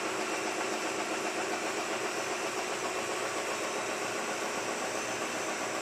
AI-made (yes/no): no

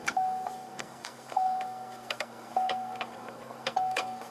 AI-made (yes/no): yes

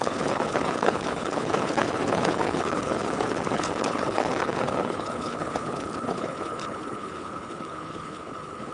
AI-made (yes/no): yes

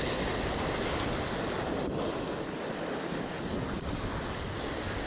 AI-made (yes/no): no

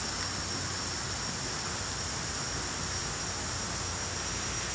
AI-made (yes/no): no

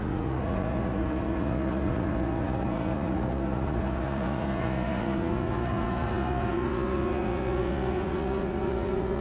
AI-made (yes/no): yes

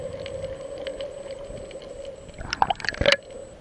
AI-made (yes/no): no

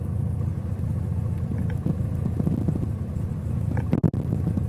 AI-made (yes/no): no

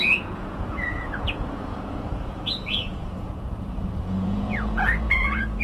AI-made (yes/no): yes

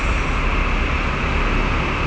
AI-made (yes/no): no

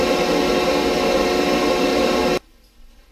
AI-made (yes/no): no